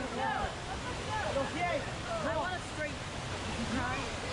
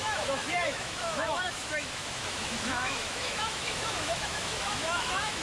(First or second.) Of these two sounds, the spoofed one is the second